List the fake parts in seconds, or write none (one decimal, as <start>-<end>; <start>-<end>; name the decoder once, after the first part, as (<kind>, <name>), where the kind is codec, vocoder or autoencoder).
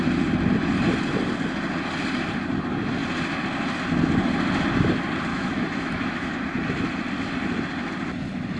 5.3-6.3 (autoencoder, DAC-VAE)